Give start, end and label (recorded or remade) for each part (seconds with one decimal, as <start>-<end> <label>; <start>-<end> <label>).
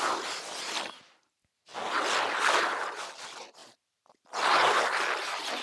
0.0-3.6 recorded; 3.6-4.8 remade; 4.8-5.6 recorded